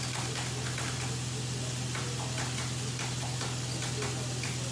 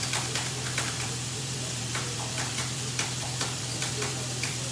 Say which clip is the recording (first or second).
first